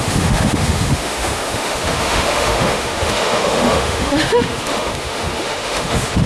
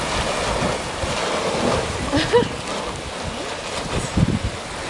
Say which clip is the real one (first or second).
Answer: second